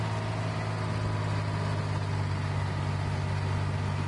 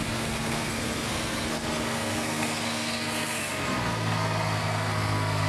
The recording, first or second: first